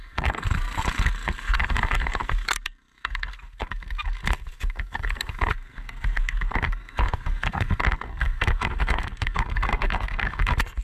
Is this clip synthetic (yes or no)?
yes